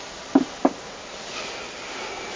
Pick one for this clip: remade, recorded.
recorded